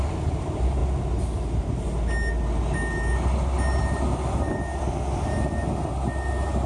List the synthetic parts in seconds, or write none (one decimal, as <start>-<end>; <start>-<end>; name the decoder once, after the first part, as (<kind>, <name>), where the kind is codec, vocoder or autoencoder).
none